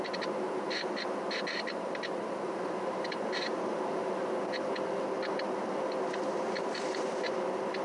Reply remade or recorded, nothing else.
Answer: recorded